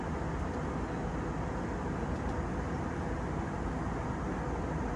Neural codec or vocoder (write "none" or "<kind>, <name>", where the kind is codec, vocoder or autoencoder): none